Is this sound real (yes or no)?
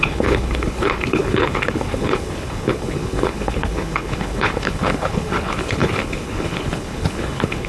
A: no